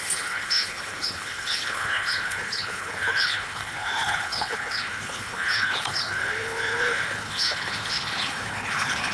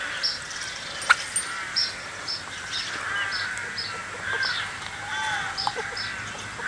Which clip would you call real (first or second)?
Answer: second